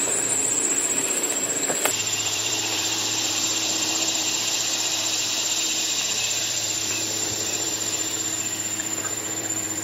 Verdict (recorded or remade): remade